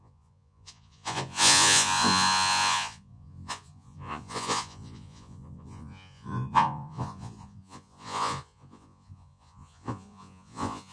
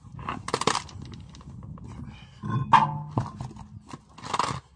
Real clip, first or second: second